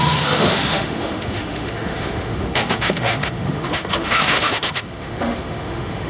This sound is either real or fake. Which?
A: fake